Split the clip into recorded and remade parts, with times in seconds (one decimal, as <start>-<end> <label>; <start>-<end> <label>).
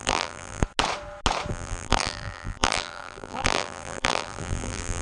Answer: 0.0-0.6 remade; 0.6-1.5 recorded; 1.5-5.0 remade